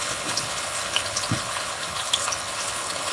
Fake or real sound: fake